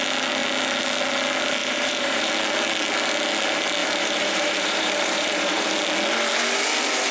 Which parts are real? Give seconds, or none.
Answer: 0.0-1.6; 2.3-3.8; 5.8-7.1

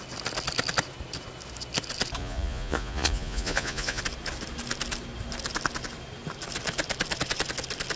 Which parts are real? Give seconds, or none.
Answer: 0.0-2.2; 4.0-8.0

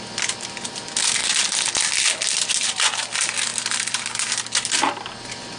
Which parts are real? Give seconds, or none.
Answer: 0.0-5.6